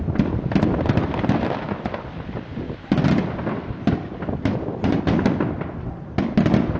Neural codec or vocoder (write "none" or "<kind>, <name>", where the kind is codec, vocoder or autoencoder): none